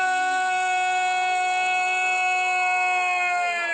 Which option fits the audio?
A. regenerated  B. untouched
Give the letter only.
B